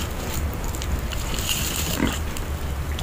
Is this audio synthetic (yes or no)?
yes